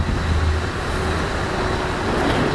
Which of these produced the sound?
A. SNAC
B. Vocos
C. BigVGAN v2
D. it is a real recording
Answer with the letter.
D